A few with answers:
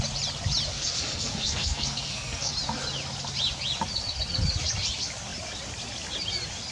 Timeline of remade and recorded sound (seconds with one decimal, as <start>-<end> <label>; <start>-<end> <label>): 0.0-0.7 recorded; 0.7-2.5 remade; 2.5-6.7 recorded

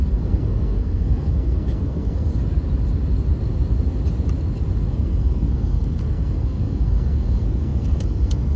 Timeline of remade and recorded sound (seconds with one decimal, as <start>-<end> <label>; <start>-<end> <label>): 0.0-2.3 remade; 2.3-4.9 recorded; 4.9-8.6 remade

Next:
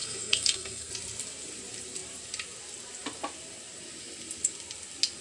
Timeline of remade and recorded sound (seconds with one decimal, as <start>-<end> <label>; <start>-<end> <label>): 0.0-0.9 remade; 0.9-5.2 recorded

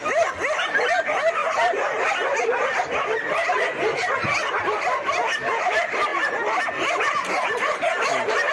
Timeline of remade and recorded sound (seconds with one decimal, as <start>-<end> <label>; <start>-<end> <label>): 0.0-8.5 recorded

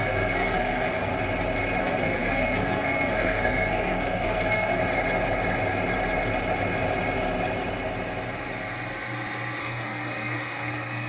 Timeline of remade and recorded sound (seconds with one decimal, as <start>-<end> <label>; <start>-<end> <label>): 0.0-1.1 remade; 1.1-1.8 recorded; 1.8-4.8 remade; 4.8-9.6 recorded; 9.6-11.1 remade

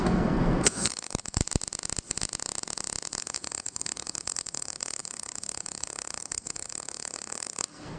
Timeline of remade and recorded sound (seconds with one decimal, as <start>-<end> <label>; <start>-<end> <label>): 0.0-1.4 remade; 1.4-3.2 recorded; 3.2-8.0 remade